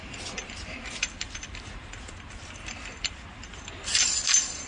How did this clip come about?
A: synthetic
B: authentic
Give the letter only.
B